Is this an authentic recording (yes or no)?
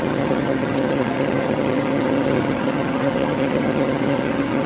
no